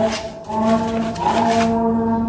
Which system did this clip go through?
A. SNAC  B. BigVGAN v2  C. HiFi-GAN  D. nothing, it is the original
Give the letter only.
D